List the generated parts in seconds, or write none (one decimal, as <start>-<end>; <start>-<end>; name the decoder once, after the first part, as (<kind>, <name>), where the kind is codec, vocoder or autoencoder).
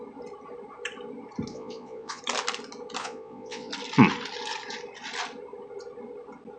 1.5-2.2 (vocoder, Vocos); 3.0-3.7